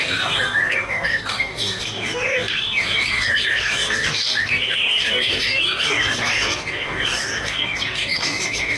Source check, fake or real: fake